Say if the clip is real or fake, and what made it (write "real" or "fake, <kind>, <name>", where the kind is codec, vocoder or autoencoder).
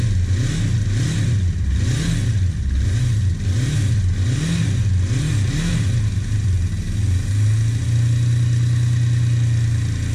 real